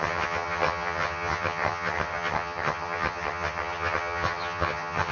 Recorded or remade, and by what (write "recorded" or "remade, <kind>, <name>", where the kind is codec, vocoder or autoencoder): remade, vocoder, HiFi-GAN